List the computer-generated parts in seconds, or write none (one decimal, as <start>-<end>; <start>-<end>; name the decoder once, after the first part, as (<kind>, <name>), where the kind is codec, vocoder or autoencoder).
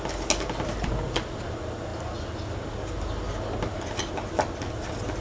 none